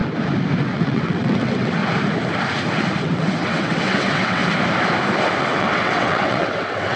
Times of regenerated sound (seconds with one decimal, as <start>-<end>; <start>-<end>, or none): 0.6-1.8; 3.0-4.4; 5.4-7.0

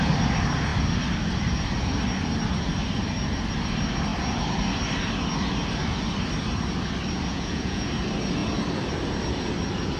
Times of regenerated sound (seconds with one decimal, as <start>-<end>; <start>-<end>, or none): 7.3-7.9

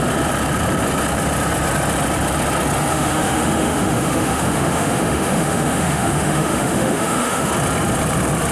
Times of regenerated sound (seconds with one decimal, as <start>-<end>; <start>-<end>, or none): 2.9-7.5

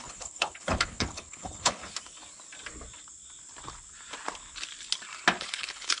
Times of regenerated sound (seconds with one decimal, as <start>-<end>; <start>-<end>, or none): 0.0-1.8; 5.4-6.0